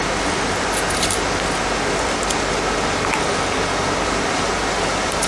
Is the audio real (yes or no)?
yes